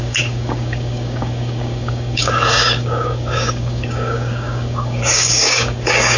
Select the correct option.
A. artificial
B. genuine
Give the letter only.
A